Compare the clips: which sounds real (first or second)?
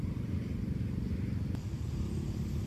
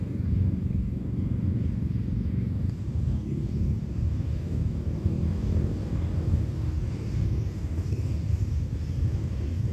first